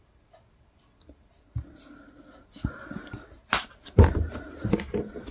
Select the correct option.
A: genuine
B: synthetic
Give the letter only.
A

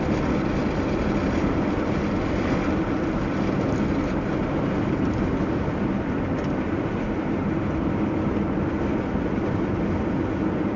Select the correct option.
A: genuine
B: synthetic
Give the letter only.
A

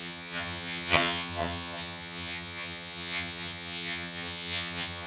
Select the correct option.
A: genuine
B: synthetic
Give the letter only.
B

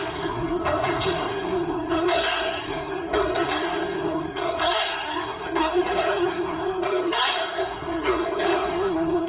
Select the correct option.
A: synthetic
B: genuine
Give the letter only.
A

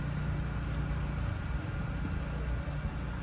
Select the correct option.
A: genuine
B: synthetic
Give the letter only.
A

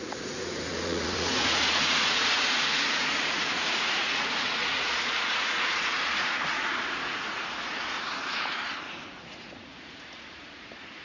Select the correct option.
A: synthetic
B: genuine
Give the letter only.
A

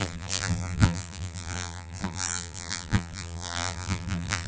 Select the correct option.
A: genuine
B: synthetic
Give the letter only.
B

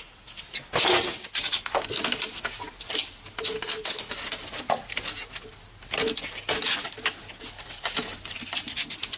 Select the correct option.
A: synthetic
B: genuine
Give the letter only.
B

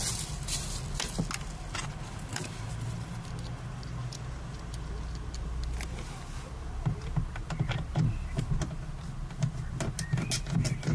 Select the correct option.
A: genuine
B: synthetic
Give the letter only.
A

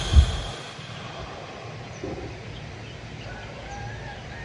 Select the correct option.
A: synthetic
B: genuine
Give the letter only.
B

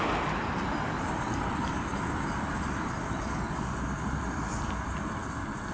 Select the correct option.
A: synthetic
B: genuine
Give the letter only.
A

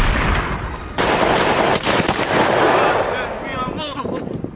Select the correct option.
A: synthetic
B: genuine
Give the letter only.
A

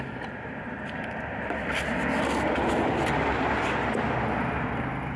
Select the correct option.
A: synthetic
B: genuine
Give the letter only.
B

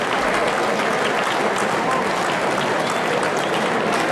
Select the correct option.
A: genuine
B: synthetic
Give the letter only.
A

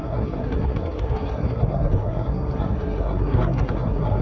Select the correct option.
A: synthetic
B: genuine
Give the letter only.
A